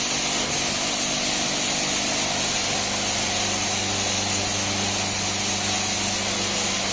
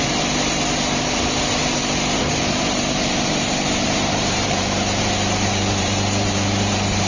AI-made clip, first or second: second